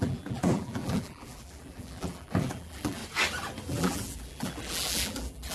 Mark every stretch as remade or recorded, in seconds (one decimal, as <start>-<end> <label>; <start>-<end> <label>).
0.0-3.0 remade; 3.0-3.7 recorded; 3.7-5.5 remade